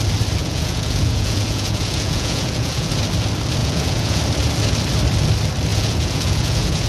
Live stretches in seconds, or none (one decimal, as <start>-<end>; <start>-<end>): 0.0-0.4; 2.9-3.6; 4.2-5.7